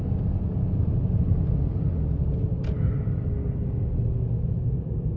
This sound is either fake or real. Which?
real